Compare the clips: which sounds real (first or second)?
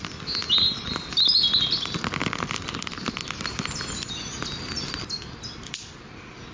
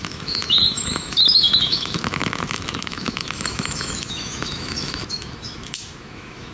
first